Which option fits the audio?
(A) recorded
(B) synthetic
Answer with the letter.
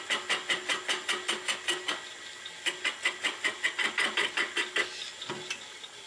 A